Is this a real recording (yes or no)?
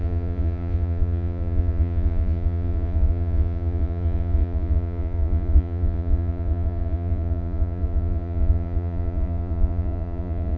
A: no